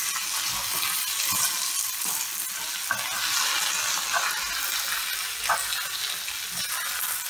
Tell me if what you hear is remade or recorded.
recorded